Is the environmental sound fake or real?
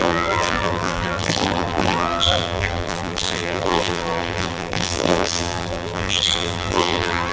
fake